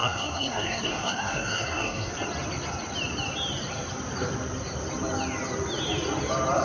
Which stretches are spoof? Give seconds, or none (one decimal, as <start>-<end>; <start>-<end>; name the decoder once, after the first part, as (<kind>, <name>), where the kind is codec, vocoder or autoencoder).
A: 0.0-2.1 (codec, SNAC)